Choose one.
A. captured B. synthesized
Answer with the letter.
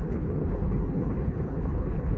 B